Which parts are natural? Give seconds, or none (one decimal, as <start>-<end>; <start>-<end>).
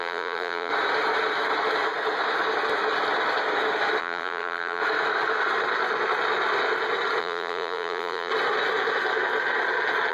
0.7-4.0; 4.8-7.2; 8.3-10.1